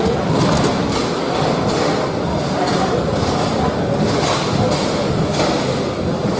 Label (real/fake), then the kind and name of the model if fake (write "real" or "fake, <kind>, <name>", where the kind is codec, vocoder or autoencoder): real